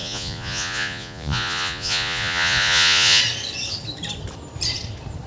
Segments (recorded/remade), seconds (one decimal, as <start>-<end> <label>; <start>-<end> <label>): 0.0-3.2 remade; 3.2-5.3 recorded